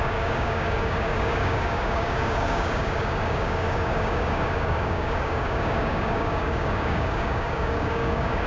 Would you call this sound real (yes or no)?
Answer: no